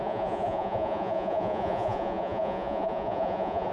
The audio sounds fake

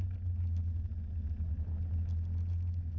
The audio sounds real